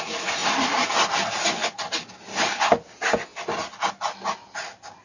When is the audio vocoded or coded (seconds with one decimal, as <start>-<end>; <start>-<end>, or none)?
none